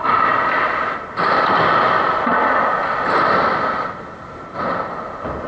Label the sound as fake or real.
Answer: real